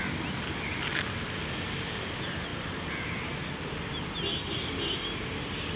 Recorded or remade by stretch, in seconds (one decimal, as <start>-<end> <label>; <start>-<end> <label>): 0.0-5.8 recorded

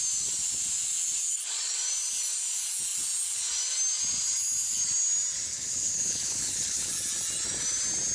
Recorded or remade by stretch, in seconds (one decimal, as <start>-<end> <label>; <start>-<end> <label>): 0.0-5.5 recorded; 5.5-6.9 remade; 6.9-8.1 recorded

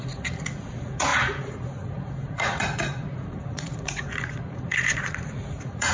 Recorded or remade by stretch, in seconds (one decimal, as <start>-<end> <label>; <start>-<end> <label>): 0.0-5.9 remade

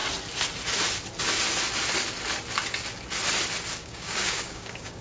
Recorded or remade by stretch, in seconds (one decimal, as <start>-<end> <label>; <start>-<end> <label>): 0.0-3.8 recorded; 3.8-5.0 remade